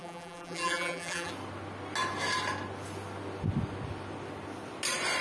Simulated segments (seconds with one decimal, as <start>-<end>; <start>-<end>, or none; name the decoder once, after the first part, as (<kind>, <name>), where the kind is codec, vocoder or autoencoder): 0.0-1.3 (vocoder, BigVGAN v2)